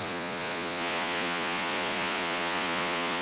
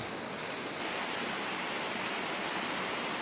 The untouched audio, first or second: second